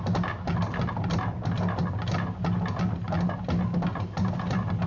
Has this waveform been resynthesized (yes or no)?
no